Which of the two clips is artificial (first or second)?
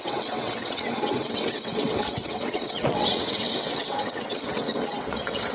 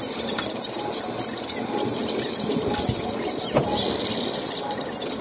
first